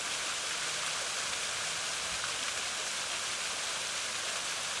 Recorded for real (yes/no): yes